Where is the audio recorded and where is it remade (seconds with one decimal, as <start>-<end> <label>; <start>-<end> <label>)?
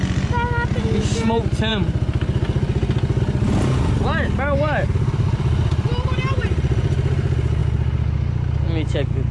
0.0-9.3 recorded